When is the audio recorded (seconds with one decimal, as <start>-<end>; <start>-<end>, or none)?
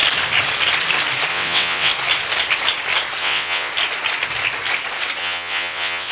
0.0-1.3; 1.9-3.2; 3.7-5.2